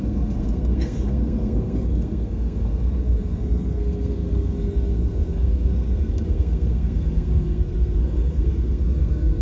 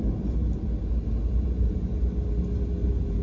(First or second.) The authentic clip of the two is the second